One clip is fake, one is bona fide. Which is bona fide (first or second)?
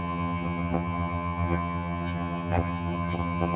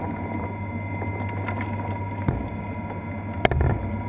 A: second